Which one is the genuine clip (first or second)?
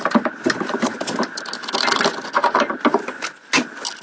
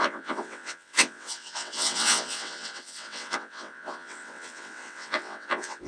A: first